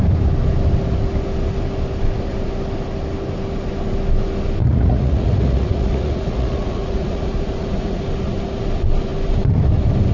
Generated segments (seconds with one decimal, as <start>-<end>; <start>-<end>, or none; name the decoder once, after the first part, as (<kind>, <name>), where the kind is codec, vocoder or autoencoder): 4.6-8.0 (vocoder, Vocos)